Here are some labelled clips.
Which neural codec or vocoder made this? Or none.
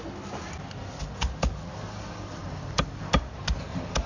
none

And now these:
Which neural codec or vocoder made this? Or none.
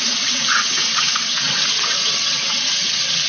vocoder, WaveNeXt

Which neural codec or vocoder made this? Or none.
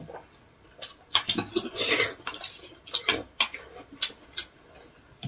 none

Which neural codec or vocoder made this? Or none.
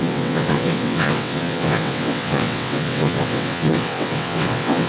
vocoder, WaveNeXt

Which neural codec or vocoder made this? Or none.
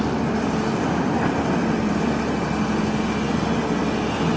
none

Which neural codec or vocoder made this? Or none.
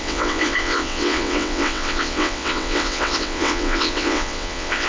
vocoder, WaveNeXt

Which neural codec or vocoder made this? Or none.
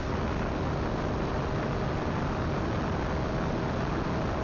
none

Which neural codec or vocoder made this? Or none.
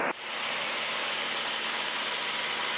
none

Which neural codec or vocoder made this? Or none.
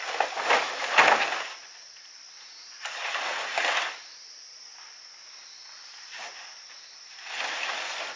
none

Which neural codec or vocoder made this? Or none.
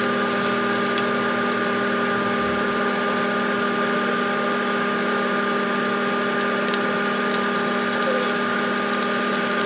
none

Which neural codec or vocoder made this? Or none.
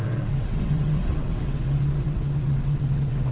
vocoder, WaveNeXt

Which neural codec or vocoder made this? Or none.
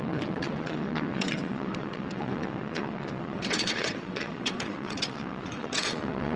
vocoder, WaveNeXt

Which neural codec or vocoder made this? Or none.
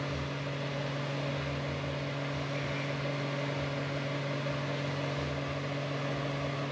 none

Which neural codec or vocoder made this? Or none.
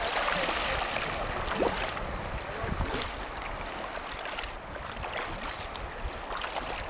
none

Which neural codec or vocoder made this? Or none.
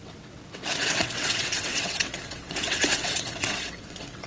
vocoder, WaveNeXt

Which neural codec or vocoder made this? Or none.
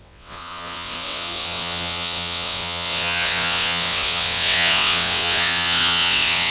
vocoder, WaveNeXt